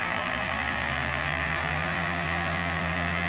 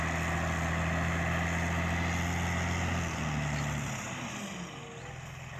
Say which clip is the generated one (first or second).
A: first